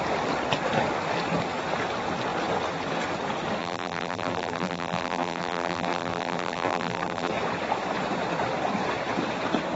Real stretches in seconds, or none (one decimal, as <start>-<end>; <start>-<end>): 0.0-3.6; 7.3-9.8